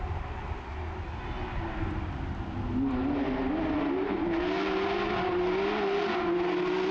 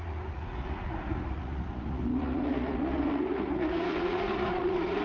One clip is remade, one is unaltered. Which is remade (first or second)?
second